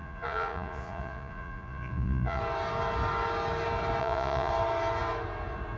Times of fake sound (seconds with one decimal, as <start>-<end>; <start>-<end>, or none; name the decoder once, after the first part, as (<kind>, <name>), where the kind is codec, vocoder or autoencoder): 0.0-2.4 (vocoder, Vocos); 4.0-4.5